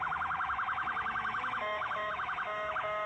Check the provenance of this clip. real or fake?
fake